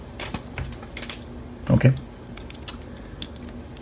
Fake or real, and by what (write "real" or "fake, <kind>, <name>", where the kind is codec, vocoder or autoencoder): real